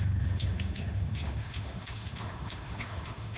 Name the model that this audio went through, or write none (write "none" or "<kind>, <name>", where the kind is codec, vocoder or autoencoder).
autoencoder, DAC-VAE